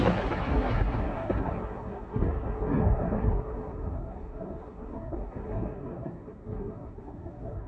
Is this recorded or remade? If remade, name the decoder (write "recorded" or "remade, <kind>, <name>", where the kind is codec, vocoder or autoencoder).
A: remade, codec, SNAC